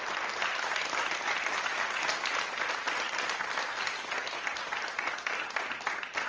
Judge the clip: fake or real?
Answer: real